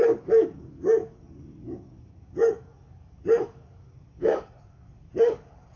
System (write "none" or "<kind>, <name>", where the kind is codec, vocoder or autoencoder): codec, DAC